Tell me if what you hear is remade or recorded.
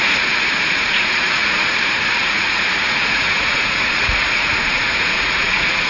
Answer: remade